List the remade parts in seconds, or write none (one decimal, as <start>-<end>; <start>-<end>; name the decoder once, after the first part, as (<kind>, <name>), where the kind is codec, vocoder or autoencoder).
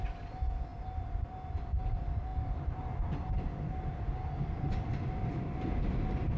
none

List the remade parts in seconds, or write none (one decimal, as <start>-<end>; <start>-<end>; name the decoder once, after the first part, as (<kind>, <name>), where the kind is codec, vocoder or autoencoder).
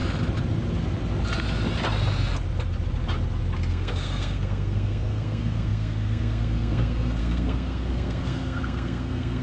3.7-9.4 (codec, SNAC)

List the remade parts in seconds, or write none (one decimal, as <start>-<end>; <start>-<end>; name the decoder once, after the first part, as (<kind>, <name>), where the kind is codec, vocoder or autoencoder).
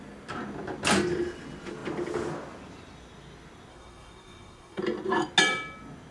3.7-4.8 (codec, SNAC)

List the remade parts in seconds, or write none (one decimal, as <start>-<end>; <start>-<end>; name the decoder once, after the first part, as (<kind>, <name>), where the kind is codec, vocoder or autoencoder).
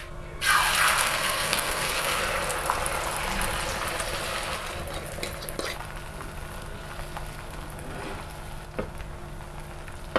1.0-2.2 (codec, SNAC)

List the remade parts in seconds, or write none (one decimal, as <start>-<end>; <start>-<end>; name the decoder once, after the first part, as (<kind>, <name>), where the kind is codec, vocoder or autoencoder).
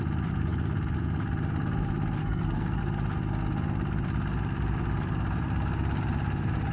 2.2-2.8 (codec, SNAC)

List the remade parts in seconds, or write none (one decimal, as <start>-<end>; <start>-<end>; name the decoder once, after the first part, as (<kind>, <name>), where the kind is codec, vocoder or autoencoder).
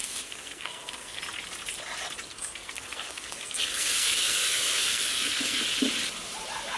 0.0-1.2 (codec, SNAC); 2.3-5.6